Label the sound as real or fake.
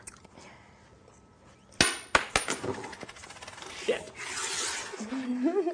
real